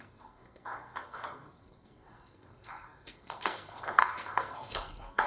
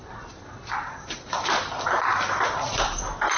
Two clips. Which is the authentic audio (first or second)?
second